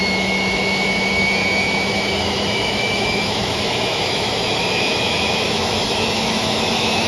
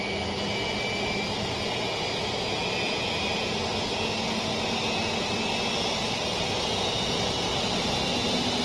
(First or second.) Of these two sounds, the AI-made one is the first